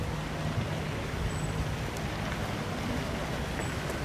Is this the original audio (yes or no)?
yes